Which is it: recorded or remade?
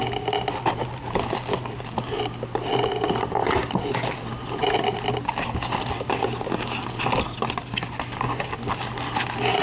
recorded